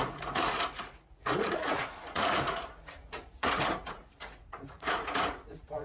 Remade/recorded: remade